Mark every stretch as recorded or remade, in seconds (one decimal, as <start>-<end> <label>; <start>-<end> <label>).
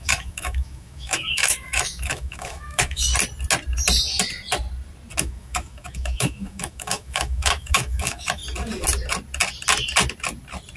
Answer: 0.0-3.1 remade; 3.1-5.2 recorded; 5.2-8.4 remade; 8.4-10.8 recorded